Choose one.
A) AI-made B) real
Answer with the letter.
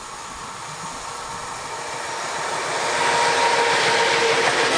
B